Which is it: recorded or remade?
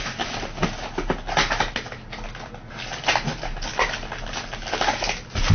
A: recorded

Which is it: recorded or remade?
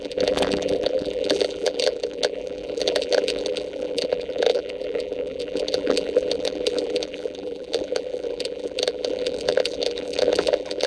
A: remade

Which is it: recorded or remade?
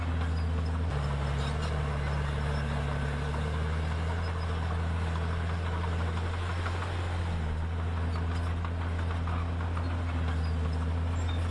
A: recorded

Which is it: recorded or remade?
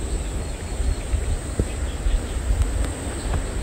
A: recorded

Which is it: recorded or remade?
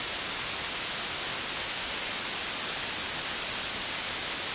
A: recorded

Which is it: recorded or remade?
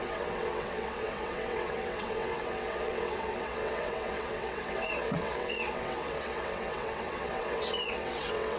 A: remade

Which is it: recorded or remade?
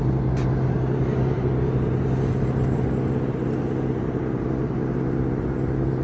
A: recorded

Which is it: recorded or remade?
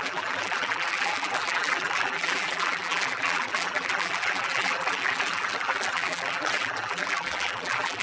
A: remade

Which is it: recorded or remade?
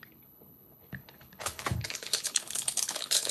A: remade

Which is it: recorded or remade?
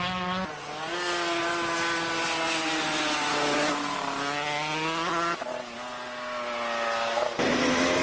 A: recorded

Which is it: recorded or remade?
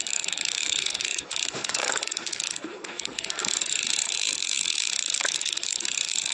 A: remade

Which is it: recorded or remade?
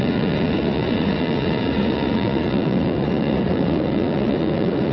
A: remade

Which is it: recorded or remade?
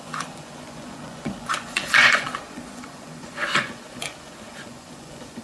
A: remade